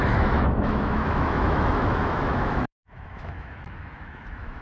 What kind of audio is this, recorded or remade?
remade